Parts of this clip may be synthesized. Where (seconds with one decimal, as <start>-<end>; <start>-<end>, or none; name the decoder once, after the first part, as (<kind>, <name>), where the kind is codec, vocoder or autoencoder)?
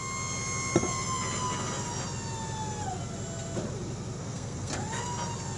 4.2-4.7 (codec, SNAC)